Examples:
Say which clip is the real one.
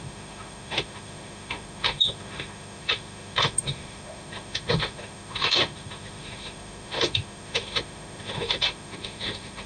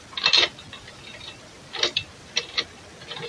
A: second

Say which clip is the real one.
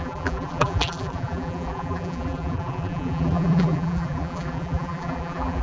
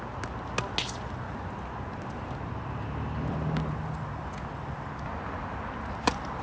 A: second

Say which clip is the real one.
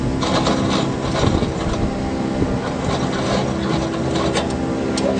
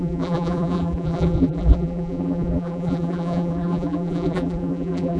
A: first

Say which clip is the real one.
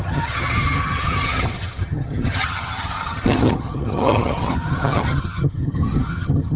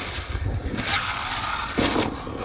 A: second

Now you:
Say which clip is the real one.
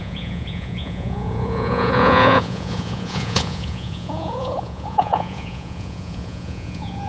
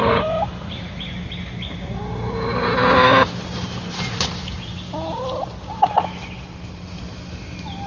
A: second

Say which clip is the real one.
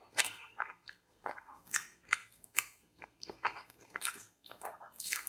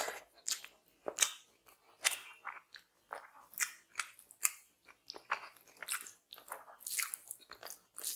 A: second